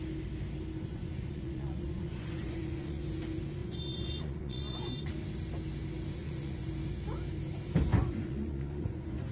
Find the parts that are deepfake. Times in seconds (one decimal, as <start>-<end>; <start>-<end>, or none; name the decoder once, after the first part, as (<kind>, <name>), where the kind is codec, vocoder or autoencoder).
0.9-3.0 (vocoder, Vocos); 3.6-5.1; 6.2-6.7; 7.9-9.3